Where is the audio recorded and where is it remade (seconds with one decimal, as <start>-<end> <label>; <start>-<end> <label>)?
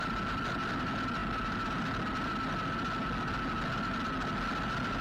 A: 0.0-5.0 recorded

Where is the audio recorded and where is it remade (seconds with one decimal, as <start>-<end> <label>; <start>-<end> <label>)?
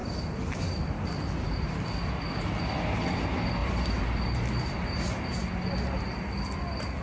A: 0.0-3.6 recorded; 3.6-5.1 remade; 5.1-7.0 recorded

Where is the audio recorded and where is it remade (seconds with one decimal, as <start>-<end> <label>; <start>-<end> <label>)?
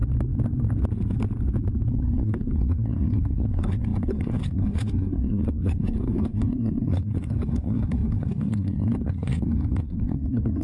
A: 0.0-1.9 recorded; 1.9-10.6 remade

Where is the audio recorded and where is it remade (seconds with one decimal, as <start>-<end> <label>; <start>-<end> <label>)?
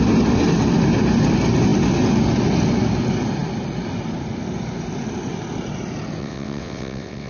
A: 0.0-6.2 recorded; 6.2-7.3 remade